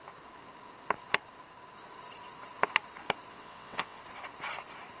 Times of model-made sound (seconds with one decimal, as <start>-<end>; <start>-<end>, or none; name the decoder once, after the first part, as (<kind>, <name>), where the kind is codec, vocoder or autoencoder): 3.3-4.0 (vocoder, WaveNeXt)

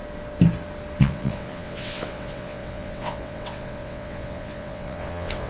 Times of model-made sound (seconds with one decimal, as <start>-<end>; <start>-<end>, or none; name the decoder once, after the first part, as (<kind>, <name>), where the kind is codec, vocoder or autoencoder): 1.0-5.5 (vocoder, WaveNeXt)